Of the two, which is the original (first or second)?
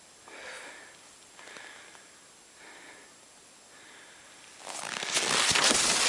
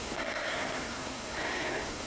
first